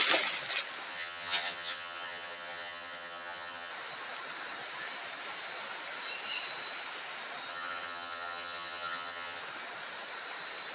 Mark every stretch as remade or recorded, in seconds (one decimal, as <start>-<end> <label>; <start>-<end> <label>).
0.0-0.9 recorded; 0.9-3.7 remade; 3.7-7.5 recorded; 7.5-9.4 remade; 9.4-10.7 recorded